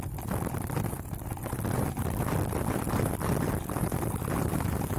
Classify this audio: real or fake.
real